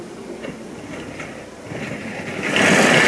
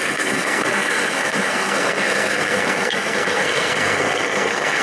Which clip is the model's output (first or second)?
second